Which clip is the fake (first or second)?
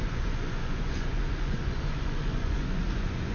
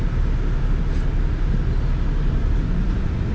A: first